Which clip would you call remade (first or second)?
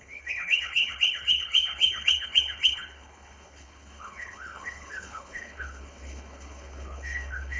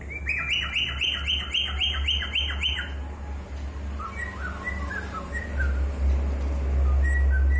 first